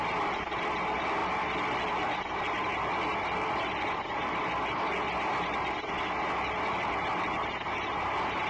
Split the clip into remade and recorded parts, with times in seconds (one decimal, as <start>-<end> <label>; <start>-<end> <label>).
0.0-8.5 recorded